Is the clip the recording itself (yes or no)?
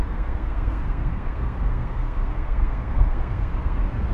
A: no